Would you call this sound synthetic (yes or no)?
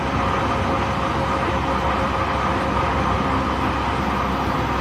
no